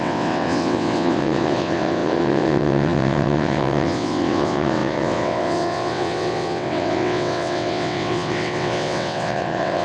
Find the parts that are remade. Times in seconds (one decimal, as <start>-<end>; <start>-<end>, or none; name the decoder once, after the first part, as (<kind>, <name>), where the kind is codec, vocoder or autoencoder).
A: 0.0-9.8 (vocoder, WaveNeXt)